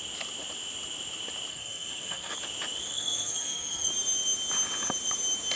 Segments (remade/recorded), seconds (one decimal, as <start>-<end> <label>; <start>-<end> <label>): 0.0-1.5 recorded; 1.5-2.3 remade; 2.3-2.9 recorded; 2.9-3.9 remade; 3.9-5.6 recorded